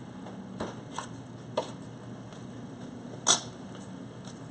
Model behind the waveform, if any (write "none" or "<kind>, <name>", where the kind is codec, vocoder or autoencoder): none